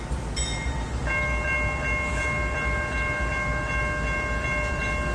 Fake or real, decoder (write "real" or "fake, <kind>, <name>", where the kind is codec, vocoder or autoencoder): real